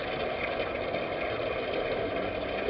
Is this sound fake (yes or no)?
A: no